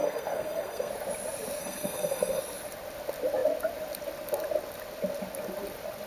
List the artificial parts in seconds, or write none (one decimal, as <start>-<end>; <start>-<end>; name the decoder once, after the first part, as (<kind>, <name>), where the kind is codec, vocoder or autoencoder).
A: 0.0-0.9 (codec, SNAC); 1.6-2.4